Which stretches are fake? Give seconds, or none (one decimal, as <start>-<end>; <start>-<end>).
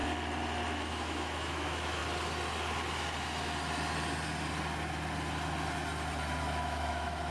0.9-2.0; 6.4-7.3